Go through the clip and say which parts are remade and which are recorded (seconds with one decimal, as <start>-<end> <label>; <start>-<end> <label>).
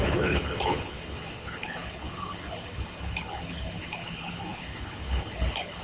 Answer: 0.0-5.8 remade